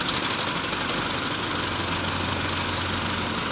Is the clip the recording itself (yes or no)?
yes